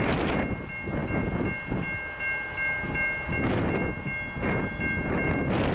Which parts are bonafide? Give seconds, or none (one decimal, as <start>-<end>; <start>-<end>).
0.0-5.7